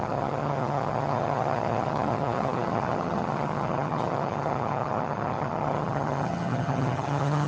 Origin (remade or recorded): remade